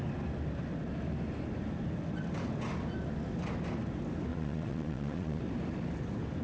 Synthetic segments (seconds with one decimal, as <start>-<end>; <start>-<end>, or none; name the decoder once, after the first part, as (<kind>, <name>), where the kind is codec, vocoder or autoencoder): 4.3-5.4 (vocoder, Vocos)